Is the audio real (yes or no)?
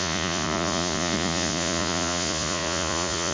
no